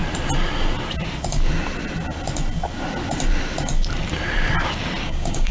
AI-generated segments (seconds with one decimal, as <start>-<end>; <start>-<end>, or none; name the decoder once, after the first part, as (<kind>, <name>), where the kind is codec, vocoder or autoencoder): 5.0-5.5 (codec, DAC)